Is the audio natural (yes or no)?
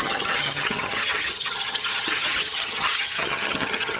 no